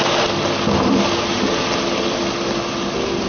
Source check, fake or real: real